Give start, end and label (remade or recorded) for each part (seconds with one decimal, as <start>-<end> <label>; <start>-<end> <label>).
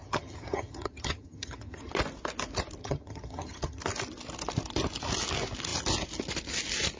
0.0-1.9 remade; 1.9-2.8 recorded; 2.8-3.8 remade; 3.8-7.0 recorded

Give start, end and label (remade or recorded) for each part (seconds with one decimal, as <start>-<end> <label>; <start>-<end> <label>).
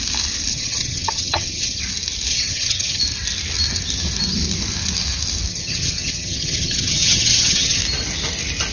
0.0-0.5 recorded; 0.5-1.8 remade; 1.8-2.3 recorded; 2.3-3.0 remade; 3.0-5.5 recorded; 5.5-7.8 remade; 7.8-8.7 recorded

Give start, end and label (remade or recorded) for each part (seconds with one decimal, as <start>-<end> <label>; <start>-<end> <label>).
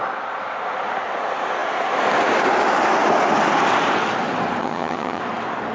0.0-4.6 recorded; 4.6-5.2 remade; 5.2-5.7 recorded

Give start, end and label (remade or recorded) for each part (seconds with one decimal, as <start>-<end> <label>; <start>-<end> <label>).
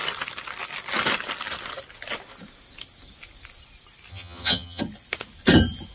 0.0-4.1 recorded; 4.1-4.8 remade; 4.8-5.9 recorded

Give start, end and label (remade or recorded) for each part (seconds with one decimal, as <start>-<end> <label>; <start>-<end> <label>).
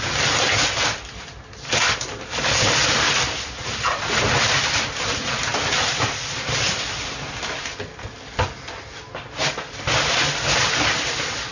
0.0-11.5 recorded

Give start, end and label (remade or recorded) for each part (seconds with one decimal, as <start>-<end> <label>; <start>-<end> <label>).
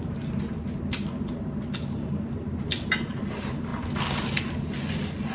0.0-5.3 recorded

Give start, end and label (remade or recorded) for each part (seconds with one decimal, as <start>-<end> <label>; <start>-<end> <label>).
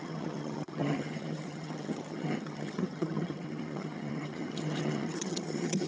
0.0-5.9 remade